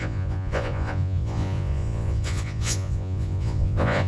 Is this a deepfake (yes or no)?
yes